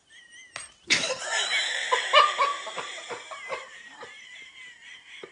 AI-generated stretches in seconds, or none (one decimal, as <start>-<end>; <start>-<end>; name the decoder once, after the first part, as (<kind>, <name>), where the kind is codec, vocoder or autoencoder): 0.6-1.2 (vocoder, BigVGAN v2); 2.5-4.3